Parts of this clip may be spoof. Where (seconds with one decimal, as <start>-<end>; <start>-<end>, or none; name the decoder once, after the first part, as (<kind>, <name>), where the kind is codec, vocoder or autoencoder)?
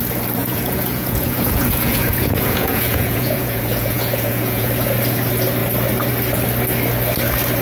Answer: 0.4-4.7 (vocoder, Vocos)